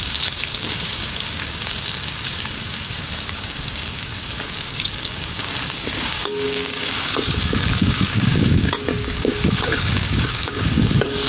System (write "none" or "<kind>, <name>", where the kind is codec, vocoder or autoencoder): codec, DAC